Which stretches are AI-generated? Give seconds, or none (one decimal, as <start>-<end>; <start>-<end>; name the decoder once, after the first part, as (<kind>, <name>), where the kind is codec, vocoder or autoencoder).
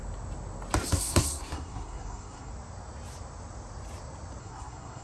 0.9-2.5 (codec, SNAC); 4.4-5.0